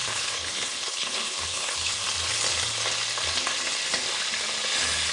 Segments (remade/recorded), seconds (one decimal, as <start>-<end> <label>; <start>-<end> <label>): 0.0-2.0 remade; 2.0-5.1 recorded

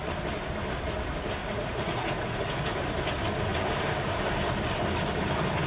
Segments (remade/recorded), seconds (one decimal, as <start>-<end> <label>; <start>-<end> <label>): 0.0-1.4 recorded; 1.4-2.5 remade; 2.5-5.7 recorded

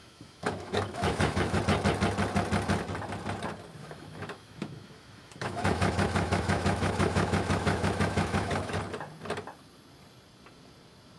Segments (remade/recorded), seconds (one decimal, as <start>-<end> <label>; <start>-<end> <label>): 0.0-1.6 remade; 1.6-3.8 recorded; 3.8-8.8 remade; 8.8-11.2 recorded

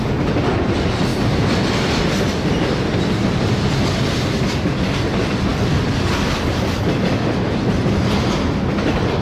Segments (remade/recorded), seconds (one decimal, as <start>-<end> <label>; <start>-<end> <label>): 0.0-5.5 recorded; 5.5-6.5 remade; 6.5-9.2 recorded

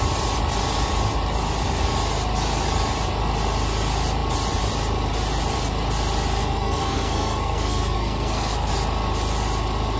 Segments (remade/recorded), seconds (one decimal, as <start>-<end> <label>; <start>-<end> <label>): 0.0-6.4 recorded; 6.4-8.7 remade; 8.7-10.0 recorded